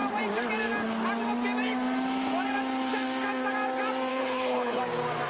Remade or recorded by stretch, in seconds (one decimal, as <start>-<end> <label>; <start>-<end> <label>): 0.0-4.1 recorded; 4.1-4.8 remade; 4.8-5.3 recorded